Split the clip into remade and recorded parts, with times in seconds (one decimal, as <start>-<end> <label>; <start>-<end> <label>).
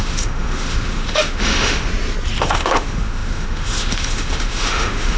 0.0-1.9 remade; 1.9-2.4 recorded; 2.4-5.2 remade